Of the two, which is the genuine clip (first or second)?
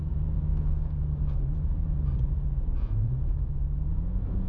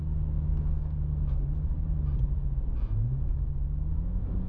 second